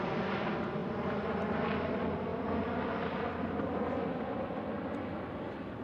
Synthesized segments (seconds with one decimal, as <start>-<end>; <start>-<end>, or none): none